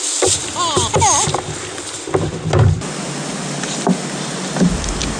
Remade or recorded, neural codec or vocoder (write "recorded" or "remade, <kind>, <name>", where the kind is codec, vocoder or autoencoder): recorded